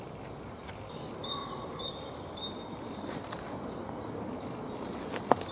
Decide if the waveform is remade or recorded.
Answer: recorded